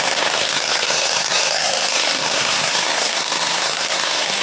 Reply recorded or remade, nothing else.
remade